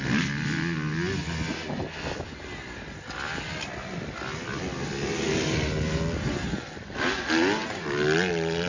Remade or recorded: recorded